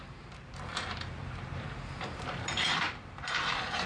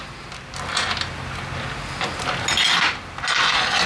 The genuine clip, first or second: second